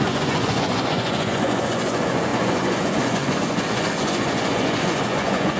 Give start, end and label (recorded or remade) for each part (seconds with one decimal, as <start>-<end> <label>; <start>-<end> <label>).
0.0-5.6 remade